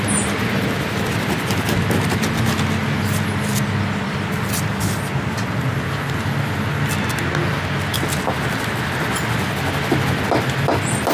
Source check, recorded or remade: recorded